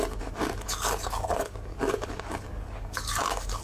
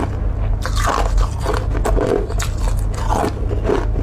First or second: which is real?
second